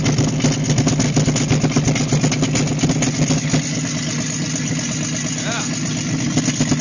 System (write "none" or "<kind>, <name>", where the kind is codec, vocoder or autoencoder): none